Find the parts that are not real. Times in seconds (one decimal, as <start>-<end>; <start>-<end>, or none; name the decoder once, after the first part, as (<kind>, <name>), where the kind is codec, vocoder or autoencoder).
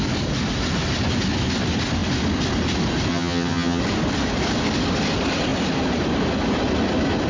3.1-3.8 (vocoder, HiFi-GAN)